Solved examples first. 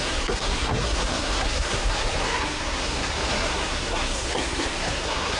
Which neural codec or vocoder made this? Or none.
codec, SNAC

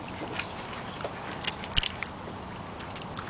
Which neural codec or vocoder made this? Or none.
none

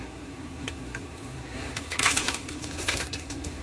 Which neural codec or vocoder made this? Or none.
codec, SNAC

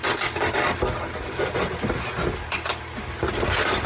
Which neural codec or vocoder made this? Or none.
none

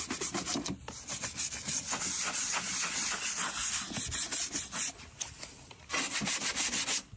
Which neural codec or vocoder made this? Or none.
none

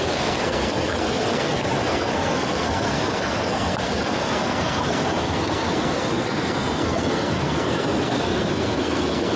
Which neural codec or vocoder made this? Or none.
codec, SNAC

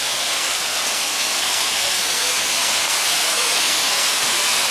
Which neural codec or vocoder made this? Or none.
codec, SNAC